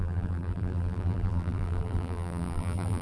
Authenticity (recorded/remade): remade